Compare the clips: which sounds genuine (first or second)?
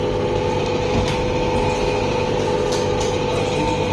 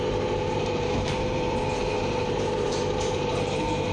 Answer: first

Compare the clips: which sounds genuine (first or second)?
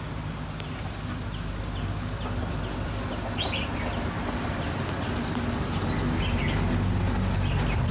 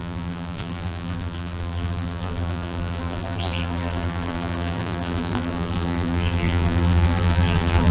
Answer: first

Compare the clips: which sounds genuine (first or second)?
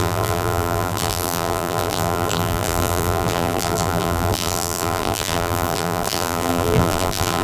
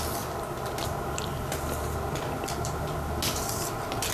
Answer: second